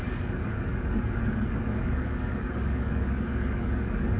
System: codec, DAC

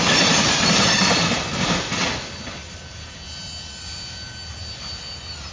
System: none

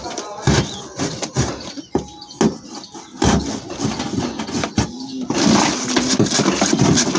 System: none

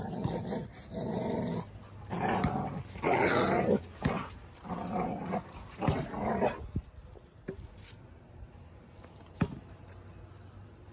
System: none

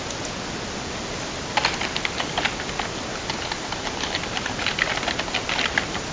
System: none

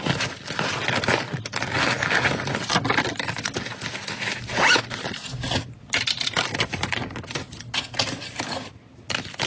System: none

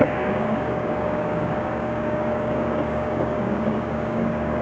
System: codec, DAC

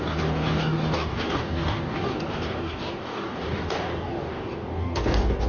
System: codec, DAC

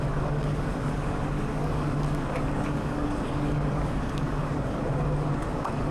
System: codec, DAC